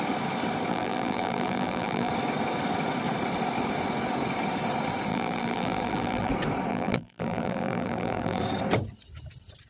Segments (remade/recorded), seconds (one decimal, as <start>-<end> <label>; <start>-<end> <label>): 0.0-0.7 recorded; 0.7-2.1 remade; 2.1-5.1 recorded; 5.1-6.3 remade; 6.3-6.7 recorded; 6.7-8.4 remade; 8.4-9.7 recorded